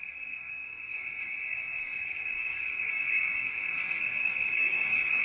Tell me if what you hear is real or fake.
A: fake